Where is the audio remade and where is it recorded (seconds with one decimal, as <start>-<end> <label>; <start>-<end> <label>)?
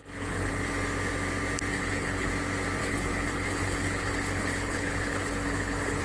0.0-0.5 remade; 0.5-1.7 recorded; 1.7-2.3 remade; 2.3-2.8 recorded; 2.8-6.0 remade